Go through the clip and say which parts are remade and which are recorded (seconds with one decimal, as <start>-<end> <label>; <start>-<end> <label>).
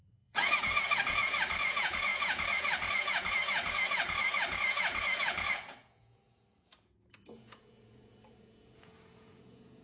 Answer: 0.0-9.8 remade